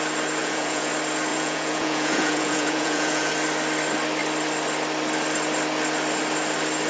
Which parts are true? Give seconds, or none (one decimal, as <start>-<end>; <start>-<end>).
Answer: 0.0-0.4; 0.9-1.3; 3.3-6.9